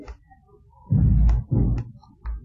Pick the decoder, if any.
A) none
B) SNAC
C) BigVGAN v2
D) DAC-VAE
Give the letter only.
A